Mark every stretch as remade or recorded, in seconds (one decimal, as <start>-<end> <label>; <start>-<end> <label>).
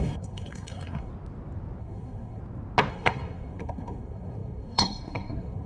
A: 0.0-1.1 remade; 1.1-1.8 recorded; 1.8-2.4 remade; 2.4-2.9 recorded; 2.9-5.7 remade